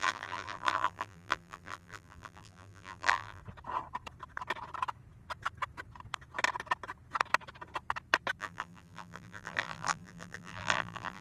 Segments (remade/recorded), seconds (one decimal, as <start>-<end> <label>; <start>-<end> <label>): 0.0-3.4 remade; 3.4-8.4 recorded; 8.4-11.2 remade

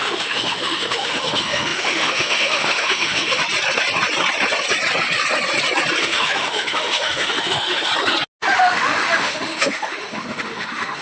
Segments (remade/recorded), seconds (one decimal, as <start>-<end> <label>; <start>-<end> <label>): 0.0-3.4 remade; 3.4-6.0 recorded; 6.0-7.9 remade; 7.9-8.6 recorded; 8.6-11.0 remade

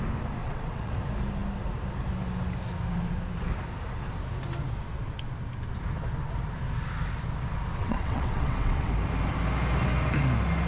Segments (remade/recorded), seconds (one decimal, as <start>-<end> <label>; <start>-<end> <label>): 0.0-0.4 recorded; 0.4-0.9 remade; 0.9-7.7 recorded; 7.7-8.9 remade; 8.9-10.7 recorded

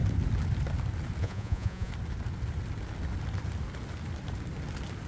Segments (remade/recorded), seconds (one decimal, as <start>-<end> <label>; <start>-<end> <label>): 0.0-1.2 recorded; 1.2-1.9 remade; 1.9-5.1 recorded

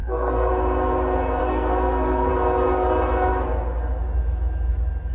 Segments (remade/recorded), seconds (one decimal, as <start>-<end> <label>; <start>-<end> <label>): 0.0-0.5 remade; 0.5-1.4 recorded; 1.4-2.3 remade; 2.3-5.1 recorded

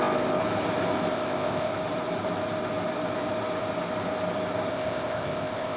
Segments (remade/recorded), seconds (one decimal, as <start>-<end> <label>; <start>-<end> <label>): 0.0-0.4 remade; 0.4-1.1 recorded; 1.1-1.7 remade; 1.7-4.7 recorded; 4.7-5.8 remade

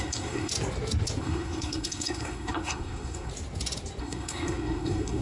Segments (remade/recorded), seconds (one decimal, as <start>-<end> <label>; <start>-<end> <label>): 0.0-0.5 remade; 0.5-1.2 recorded; 1.2-3.3 remade; 3.3-4.0 recorded; 4.0-5.2 remade

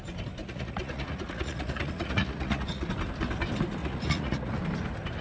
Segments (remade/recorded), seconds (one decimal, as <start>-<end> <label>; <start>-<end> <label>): 0.0-0.4 recorded; 0.4-2.9 remade; 2.9-3.8 recorded; 3.8-4.6 remade; 4.6-5.2 recorded